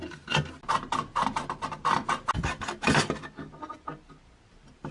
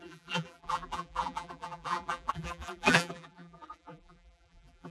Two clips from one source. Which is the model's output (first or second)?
second